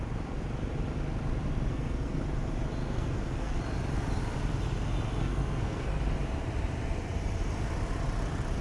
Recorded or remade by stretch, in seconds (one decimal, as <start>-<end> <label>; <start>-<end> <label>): 0.0-1.7 recorded; 1.7-2.2 remade; 2.2-2.8 recorded; 2.8-3.6 remade; 3.6-5.2 recorded; 5.2-6.0 remade; 6.0-8.6 recorded